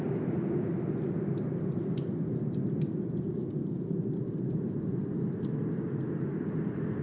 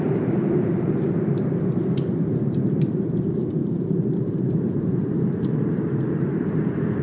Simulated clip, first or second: second